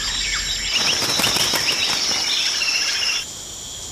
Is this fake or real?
real